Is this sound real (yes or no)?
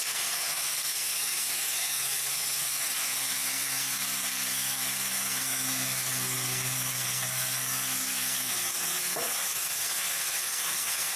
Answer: no